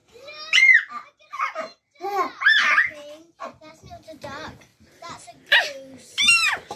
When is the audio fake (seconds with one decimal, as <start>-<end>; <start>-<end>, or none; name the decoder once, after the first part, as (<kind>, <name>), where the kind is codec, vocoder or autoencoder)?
none